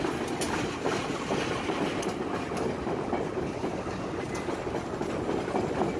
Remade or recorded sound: recorded